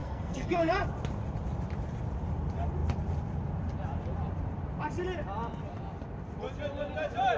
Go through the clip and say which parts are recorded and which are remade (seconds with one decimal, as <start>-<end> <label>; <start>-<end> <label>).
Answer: 0.0-0.7 remade; 0.7-7.4 recorded